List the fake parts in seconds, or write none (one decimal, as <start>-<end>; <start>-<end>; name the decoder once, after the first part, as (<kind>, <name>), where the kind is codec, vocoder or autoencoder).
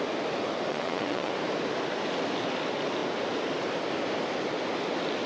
0.7-1.3 (vocoder, Vocos)